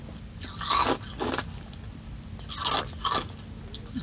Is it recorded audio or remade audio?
recorded